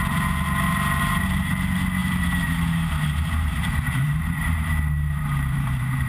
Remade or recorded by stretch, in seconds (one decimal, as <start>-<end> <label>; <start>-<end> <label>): 0.0-2.0 recorded; 2.0-6.1 remade

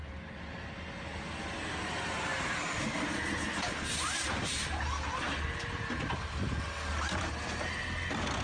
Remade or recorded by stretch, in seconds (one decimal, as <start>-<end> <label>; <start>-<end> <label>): 0.0-8.4 recorded

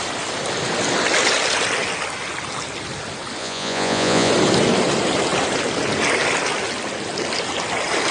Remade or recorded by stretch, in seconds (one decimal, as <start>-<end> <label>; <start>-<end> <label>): 0.0-3.4 recorded; 3.4-4.3 remade; 4.3-8.1 recorded